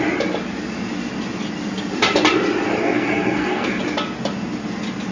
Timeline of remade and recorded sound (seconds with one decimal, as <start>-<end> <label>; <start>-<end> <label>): 0.0-2.8 recorded; 2.8-3.8 remade; 3.8-5.1 recorded